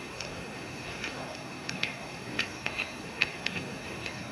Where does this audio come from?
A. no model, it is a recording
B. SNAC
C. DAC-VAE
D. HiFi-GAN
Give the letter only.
B